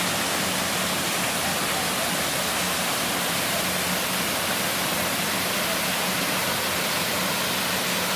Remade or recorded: recorded